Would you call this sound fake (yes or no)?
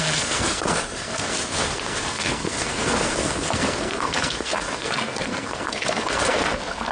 yes